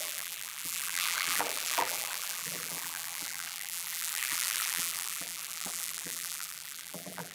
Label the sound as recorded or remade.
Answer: remade